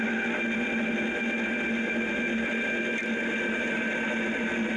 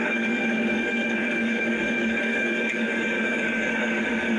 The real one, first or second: first